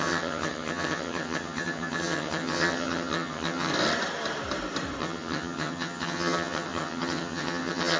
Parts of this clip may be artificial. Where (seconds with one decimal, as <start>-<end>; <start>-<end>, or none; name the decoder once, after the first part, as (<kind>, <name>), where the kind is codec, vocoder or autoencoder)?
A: 0.0-3.7 (vocoder, HiFi-GAN); 5.0-8.0